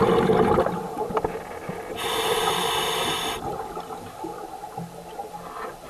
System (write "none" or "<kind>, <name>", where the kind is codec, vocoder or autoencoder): none